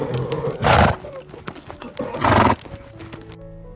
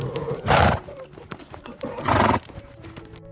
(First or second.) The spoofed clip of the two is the second